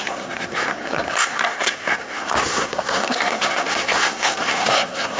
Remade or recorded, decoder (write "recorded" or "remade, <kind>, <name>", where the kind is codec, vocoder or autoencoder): remade, codec, SNAC